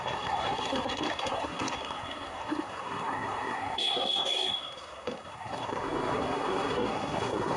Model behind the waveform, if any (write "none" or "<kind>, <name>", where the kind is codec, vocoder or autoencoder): codec, SNAC